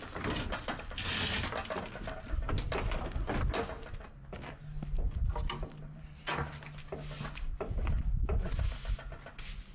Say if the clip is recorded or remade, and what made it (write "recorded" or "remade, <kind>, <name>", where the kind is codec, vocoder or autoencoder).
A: recorded